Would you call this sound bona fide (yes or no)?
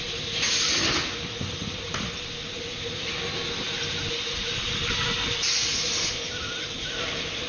yes